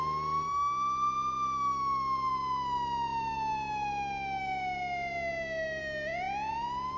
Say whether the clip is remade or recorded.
recorded